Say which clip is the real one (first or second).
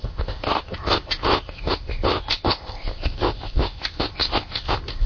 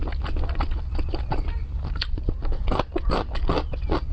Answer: second